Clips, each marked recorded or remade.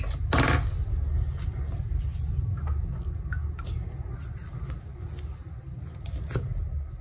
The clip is recorded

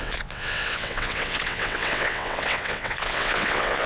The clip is remade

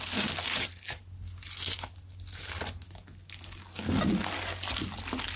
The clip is recorded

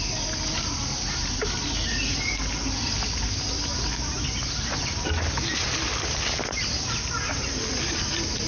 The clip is recorded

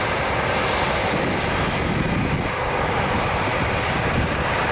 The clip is recorded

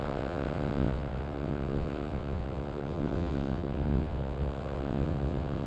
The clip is remade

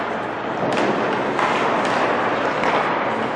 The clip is recorded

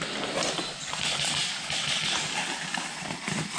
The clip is recorded